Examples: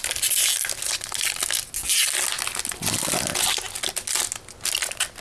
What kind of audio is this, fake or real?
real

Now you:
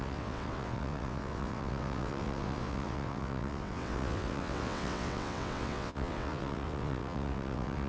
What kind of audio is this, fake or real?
fake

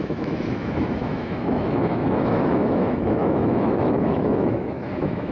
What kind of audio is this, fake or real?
fake